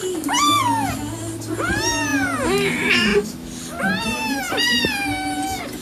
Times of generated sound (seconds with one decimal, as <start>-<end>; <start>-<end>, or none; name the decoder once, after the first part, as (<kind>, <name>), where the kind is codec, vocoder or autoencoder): none